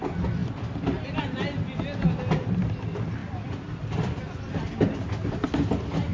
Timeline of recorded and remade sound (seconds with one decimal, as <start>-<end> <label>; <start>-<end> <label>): 0.0-0.4 recorded; 0.4-1.2 remade; 1.2-3.2 recorded; 3.2-4.6 remade; 4.6-6.1 recorded